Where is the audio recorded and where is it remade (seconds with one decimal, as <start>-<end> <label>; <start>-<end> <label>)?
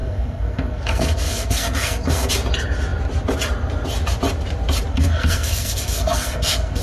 0.0-2.3 remade; 2.3-4.9 recorded; 4.9-6.8 remade